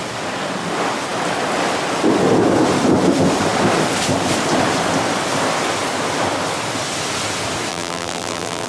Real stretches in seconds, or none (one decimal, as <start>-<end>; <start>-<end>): 0.0-7.7